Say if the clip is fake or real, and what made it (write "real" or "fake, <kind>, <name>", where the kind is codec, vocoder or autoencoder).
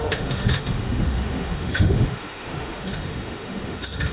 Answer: fake, autoencoder, DAC-VAE